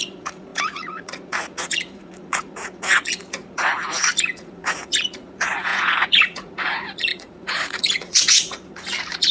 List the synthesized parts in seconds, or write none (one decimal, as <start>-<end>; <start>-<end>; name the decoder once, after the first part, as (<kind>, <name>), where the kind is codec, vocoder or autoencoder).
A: 0.0-9.3 (vocoder, Vocos)